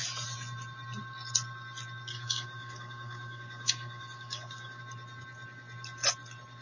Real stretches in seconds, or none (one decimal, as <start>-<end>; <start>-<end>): 0.0-2.1; 4.8-6.6